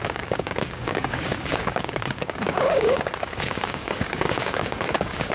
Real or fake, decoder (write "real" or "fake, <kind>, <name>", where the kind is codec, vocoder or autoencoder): fake, codec, DAC